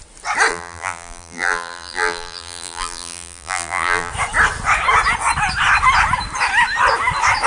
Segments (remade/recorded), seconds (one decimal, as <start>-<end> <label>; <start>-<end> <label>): 0.0-0.5 recorded; 0.5-4.1 remade; 4.1-7.5 recorded